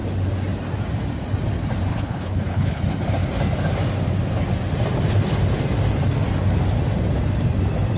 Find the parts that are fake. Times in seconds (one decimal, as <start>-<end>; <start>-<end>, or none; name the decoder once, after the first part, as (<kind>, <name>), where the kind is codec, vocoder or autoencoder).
1.9-2.8 (codec, HILCodec)